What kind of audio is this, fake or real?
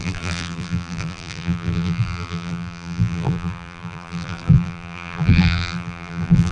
fake